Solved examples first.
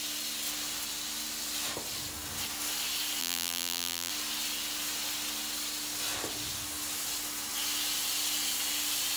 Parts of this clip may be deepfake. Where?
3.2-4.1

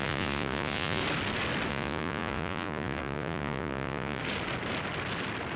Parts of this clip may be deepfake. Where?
0.0-1.0; 1.7-4.2

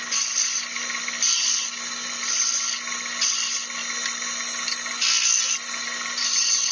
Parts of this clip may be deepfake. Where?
none

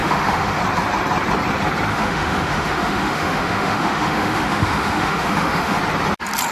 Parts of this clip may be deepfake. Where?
0.0-0.6; 1.9-5.8

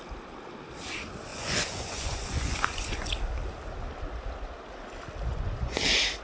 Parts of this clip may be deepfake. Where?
1.3-3.1; 5.3-5.8

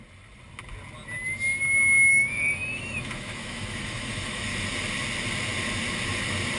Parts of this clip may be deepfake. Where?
2.1-4.5

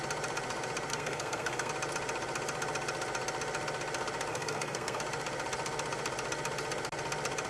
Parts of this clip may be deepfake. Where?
0.9-1.7; 4.3-5.0

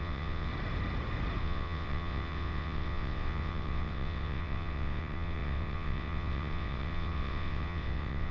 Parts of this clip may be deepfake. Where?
0.0-0.5; 1.4-8.3